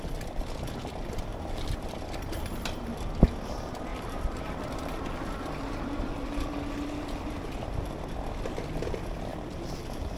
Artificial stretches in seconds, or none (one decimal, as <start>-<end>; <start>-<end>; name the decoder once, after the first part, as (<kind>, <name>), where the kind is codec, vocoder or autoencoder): 1.3-3.1 (vocoder, BigVGAN v2); 3.9-5.1; 9.3-10.2